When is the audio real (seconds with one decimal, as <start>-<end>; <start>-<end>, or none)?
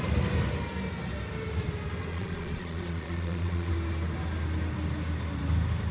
0.0-2.1; 3.7-5.9